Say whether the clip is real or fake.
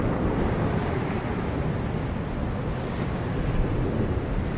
real